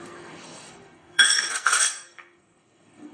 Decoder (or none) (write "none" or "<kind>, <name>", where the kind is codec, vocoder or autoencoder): codec, SNAC